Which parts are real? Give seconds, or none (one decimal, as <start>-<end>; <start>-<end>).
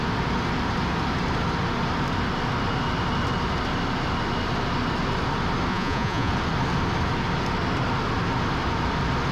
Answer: 0.0-5.7; 6.3-9.3